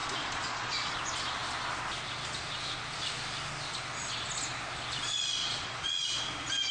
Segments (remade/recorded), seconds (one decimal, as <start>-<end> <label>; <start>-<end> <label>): 0.0-0.9 remade; 0.9-5.4 recorded; 5.4-6.0 remade; 6.0-6.7 recorded

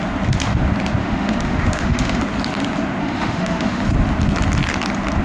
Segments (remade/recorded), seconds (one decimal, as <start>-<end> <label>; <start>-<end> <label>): 0.0-1.0 recorded; 1.0-2.2 remade; 2.2-3.0 recorded; 3.0-3.8 remade; 3.8-5.2 recorded

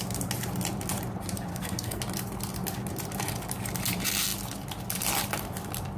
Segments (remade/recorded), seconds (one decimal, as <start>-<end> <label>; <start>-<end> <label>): 0.0-1.5 recorded; 1.5-2.0 remade; 2.0-6.0 recorded